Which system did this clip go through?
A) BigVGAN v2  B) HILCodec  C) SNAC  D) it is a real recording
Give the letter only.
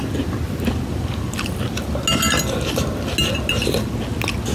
D